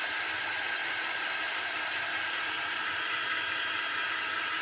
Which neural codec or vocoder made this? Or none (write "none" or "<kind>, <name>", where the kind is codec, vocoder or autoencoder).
vocoder, BigVGAN v2